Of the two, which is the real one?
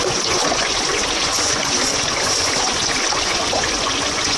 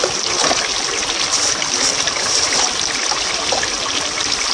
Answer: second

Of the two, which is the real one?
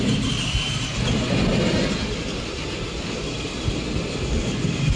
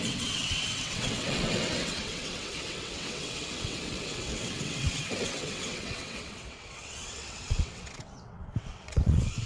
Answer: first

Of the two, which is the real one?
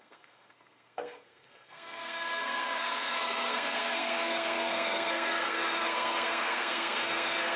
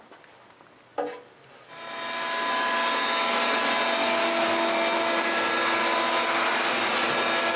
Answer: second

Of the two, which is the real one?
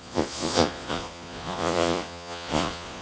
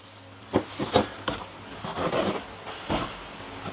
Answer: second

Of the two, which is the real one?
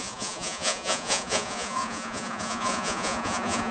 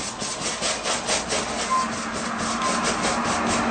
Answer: second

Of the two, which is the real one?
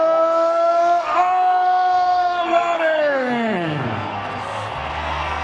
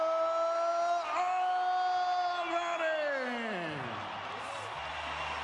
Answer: second